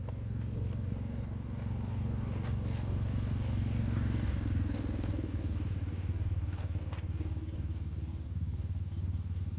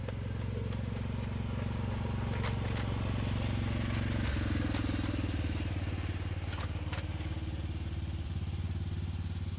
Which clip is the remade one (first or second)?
first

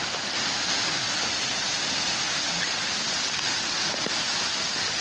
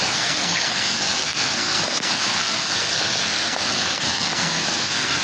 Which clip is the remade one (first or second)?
second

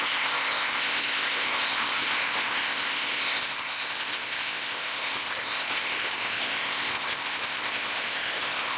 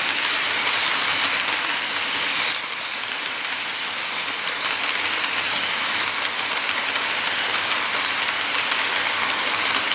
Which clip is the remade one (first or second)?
first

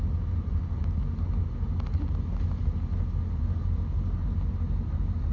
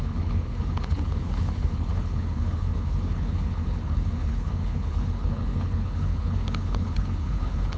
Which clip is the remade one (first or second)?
second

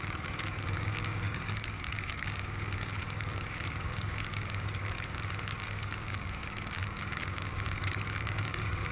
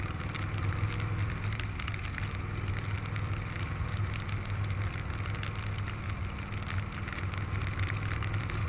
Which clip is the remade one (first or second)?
first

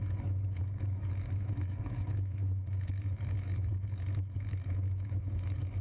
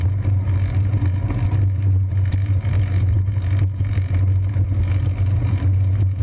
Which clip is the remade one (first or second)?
first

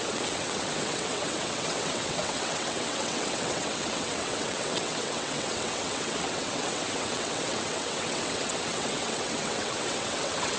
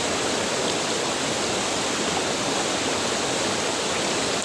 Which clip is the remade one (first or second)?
first